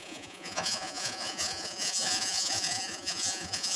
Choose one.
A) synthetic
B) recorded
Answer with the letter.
A